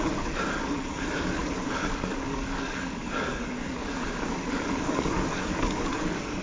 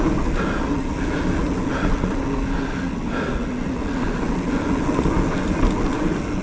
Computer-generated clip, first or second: first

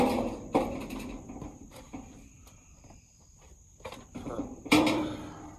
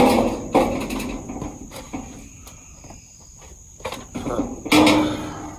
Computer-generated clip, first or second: first